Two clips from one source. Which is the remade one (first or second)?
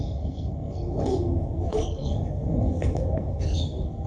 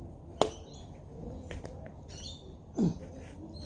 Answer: first